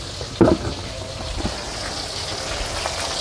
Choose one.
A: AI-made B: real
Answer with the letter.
B